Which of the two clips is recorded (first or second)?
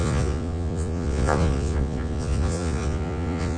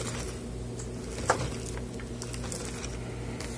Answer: second